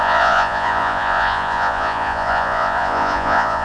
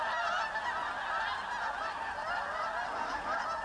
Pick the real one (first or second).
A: second